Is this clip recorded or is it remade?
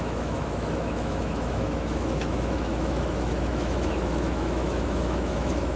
remade